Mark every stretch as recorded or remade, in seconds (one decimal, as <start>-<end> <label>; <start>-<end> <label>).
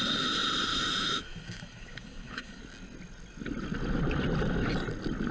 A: 0.0-0.7 recorded; 0.7-2.6 remade; 2.6-5.3 recorded